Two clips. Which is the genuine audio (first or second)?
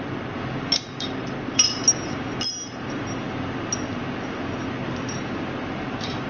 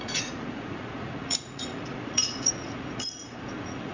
first